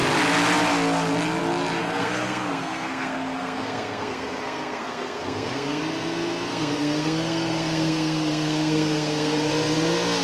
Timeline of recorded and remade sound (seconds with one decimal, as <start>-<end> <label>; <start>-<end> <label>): 0.0-1.8 recorded; 1.8-5.8 remade; 5.8-6.5 recorded; 6.5-9.5 remade; 9.5-10.2 recorded

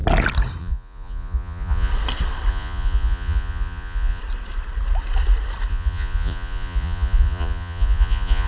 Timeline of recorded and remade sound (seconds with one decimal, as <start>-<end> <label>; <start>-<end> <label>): 0.0-0.6 recorded; 0.6-1.9 remade; 1.9-2.5 recorded; 2.5-4.2 remade; 4.2-5.7 recorded; 5.7-8.5 remade

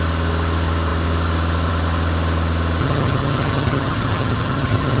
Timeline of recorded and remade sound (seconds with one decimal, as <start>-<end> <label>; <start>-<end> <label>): 0.0-2.8 recorded; 2.8-5.0 remade

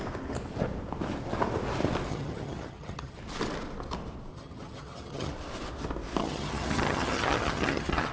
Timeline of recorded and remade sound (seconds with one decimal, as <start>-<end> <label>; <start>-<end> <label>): 0.0-2.1 recorded; 2.1-3.2 remade; 3.2-4.3 recorded; 4.3-5.3 remade; 5.3-6.2 recorded; 6.2-8.1 remade